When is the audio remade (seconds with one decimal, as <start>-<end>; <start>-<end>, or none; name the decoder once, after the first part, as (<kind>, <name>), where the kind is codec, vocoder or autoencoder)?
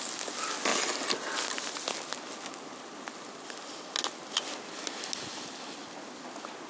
none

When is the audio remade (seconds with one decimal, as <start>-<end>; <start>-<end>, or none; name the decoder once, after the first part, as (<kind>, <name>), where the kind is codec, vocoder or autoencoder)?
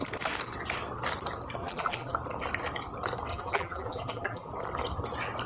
1.6-2.1 (vocoder, BigVGAN v2); 3.3-4.5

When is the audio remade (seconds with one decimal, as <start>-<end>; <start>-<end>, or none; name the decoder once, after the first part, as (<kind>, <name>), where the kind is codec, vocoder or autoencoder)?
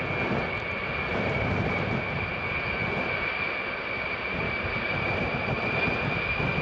1.1-2.3 (vocoder, BigVGAN v2); 4.3-5.8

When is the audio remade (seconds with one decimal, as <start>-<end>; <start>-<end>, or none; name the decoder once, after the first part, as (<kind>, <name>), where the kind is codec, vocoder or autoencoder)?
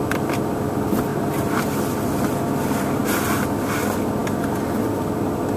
1.1-1.7 (vocoder, BigVGAN v2)